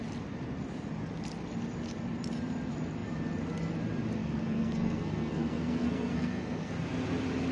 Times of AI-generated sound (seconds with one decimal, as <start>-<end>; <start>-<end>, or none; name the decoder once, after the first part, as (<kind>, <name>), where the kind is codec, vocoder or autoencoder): 4.2-6.7 (codec, SNAC)